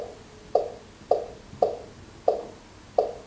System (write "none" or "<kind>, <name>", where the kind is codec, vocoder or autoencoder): none